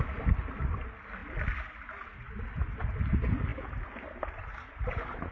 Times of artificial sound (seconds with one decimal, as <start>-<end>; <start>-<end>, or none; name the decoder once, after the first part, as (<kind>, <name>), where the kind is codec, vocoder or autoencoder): none

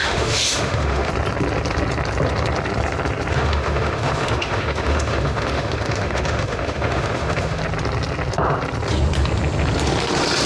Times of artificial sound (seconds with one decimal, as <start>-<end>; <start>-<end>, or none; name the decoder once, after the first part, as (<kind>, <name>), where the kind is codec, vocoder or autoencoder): 0.0-1.1 (autoencoder, DAC-VAE); 3.3-7.6

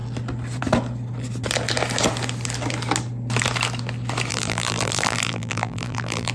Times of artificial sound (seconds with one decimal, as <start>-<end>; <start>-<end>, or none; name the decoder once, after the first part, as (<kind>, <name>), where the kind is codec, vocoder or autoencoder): 4.3-6.3 (vocoder, BigVGAN v2)